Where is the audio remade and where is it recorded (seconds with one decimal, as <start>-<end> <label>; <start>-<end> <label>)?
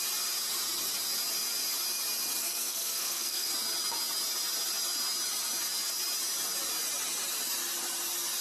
0.0-2.4 recorded; 2.4-3.5 remade; 3.5-8.4 recorded